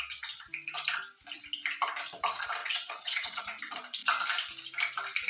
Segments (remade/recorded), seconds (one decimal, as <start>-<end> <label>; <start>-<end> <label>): 0.0-2.6 recorded; 2.6-3.4 remade; 3.4-5.3 recorded